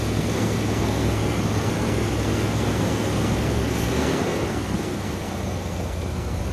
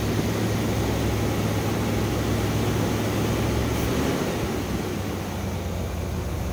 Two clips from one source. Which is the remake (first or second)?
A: first